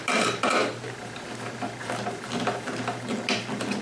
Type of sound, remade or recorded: recorded